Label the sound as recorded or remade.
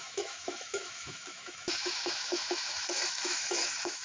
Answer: remade